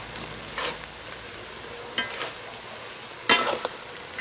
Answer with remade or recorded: recorded